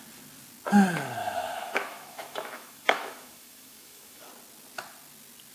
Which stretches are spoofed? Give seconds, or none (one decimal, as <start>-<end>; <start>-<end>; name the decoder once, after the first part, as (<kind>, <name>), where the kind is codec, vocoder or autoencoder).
1.2-4.2 (autoencoder, DAC-VAE)